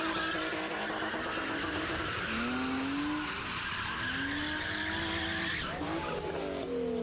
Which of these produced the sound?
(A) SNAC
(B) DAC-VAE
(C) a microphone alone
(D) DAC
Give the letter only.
C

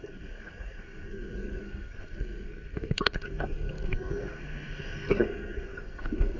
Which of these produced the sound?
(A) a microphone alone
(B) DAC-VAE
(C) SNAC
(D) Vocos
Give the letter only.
C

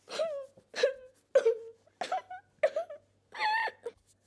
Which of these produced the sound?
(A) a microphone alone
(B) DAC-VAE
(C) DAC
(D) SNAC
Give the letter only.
A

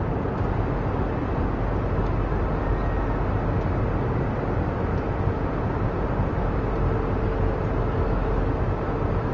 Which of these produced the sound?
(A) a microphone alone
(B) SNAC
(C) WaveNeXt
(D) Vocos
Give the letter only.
A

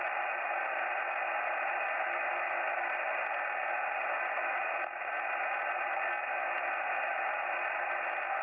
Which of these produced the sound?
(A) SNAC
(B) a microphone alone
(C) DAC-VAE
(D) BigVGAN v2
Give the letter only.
B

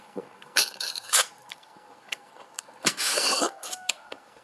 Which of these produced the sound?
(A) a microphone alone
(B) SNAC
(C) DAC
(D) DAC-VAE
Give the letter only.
B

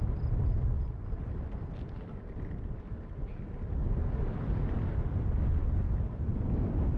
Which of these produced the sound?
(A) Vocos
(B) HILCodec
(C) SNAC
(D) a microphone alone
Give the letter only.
D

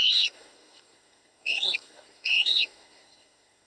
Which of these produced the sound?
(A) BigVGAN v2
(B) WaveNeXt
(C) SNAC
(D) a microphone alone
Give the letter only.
C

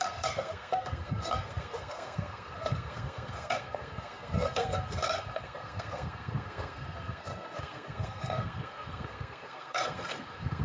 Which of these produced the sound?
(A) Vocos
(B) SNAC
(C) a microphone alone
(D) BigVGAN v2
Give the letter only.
B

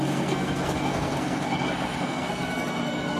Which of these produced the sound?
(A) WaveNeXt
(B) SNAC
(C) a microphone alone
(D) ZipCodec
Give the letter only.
B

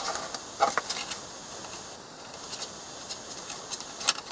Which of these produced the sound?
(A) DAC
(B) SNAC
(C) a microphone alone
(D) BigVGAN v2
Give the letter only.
C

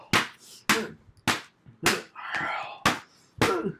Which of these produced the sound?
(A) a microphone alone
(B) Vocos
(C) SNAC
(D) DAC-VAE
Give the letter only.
A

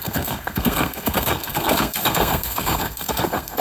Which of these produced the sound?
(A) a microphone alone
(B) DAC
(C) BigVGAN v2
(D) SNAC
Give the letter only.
D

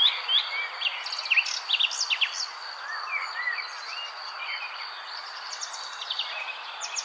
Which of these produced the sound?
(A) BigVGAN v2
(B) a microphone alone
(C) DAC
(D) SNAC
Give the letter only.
B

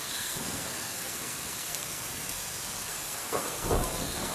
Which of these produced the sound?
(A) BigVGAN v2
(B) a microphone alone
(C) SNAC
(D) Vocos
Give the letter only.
C